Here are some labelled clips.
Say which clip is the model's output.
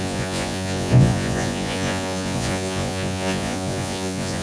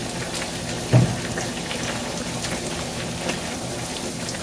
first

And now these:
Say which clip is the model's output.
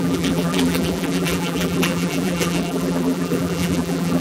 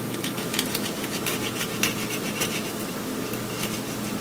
first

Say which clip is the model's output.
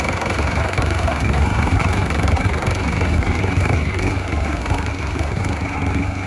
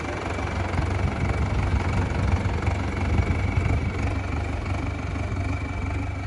first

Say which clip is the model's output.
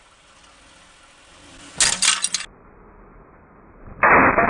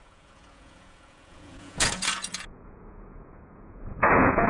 second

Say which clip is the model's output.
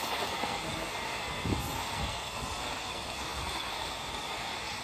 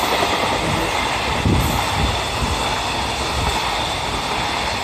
first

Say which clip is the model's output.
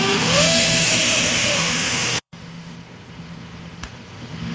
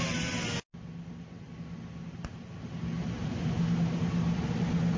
first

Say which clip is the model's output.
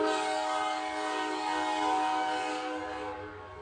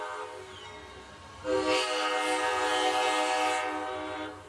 first